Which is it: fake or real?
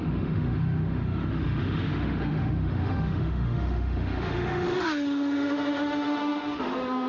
fake